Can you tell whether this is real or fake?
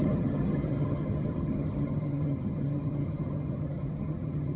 fake